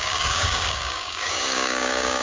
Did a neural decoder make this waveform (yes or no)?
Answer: yes